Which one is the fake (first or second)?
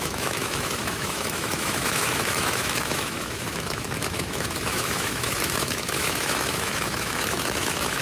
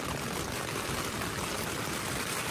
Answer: first